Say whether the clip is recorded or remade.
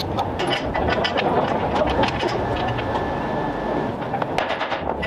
recorded